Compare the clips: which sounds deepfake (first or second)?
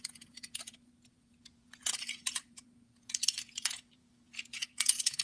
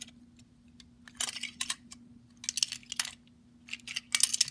first